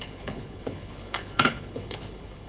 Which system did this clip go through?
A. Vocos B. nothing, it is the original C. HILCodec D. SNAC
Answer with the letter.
C